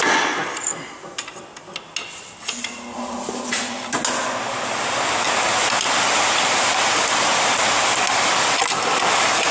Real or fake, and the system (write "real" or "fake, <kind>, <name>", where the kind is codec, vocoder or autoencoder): real